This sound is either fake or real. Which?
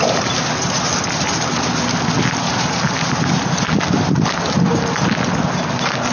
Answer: real